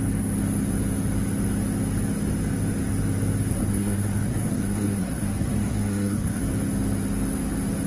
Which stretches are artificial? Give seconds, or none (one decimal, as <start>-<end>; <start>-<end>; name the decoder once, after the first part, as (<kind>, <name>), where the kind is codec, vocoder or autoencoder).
3.5-6.4 (codec, SNAC)